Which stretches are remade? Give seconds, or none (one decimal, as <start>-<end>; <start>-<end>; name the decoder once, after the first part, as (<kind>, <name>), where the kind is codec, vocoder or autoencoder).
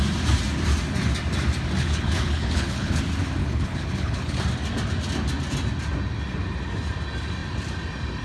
1.8-3.0 (codec, HILCodec); 3.4-4.4